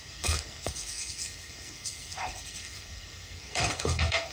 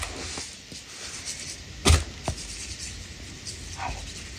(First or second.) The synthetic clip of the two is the first